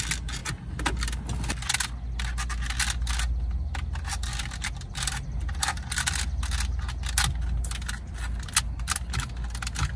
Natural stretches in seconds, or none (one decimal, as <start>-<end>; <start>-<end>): 0.0-10.0